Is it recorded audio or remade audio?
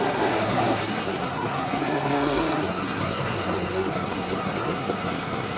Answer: remade